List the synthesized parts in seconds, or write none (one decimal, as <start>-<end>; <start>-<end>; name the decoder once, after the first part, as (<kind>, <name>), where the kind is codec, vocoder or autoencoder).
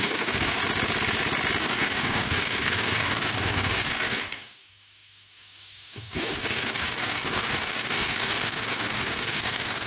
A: 0.0-0.6 (codec, DAC); 1.6-9.9